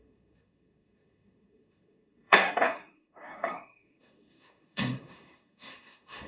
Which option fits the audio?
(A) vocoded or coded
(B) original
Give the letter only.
A